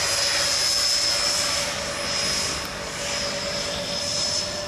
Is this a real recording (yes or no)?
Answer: yes